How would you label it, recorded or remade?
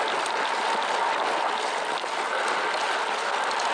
recorded